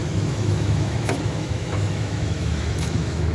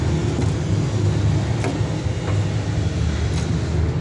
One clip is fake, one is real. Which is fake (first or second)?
first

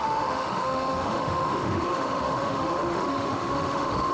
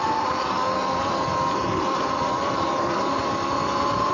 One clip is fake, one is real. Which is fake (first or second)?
first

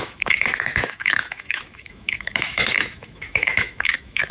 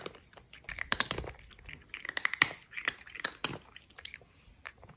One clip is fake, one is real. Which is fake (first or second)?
first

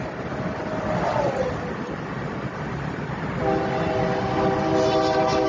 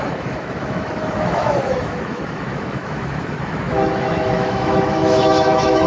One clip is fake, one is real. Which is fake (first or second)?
second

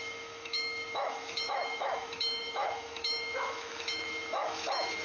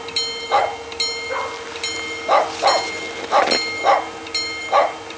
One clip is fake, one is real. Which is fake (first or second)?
first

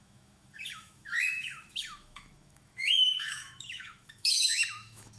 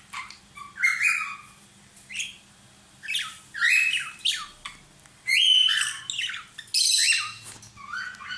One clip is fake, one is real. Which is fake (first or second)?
first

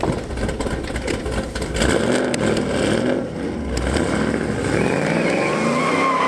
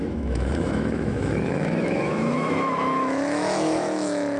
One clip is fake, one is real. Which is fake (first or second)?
second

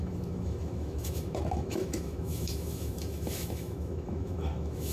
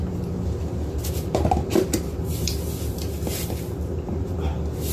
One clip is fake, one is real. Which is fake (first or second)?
first